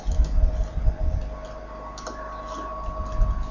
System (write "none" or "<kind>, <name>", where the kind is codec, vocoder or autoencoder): none